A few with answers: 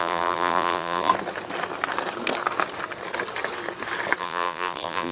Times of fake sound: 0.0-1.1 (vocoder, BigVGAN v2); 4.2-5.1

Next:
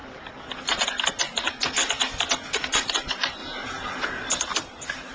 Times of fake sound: 2.9-3.4 (vocoder, BigVGAN v2); 4.4-5.1